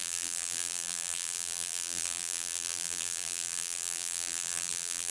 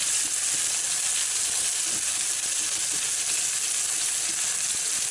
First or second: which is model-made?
first